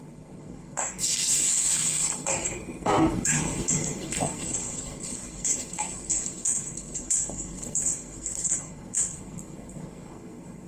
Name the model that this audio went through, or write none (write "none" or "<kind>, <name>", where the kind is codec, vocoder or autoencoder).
codec, SNAC